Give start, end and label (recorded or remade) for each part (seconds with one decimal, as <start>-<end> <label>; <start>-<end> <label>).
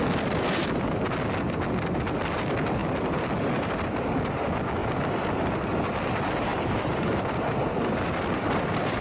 0.0-4.8 recorded; 4.8-5.5 remade; 5.5-6.5 recorded; 6.5-8.6 remade; 8.6-9.0 recorded